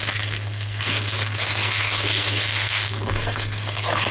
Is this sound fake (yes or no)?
yes